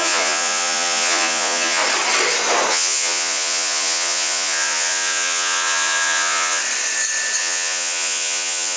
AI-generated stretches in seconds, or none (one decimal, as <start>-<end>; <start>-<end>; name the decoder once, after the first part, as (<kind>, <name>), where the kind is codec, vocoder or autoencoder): 0.0-1.8 (vocoder, Vocos); 2.7-6.6; 7.4-8.8